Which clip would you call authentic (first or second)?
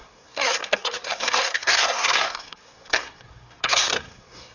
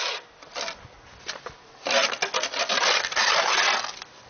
second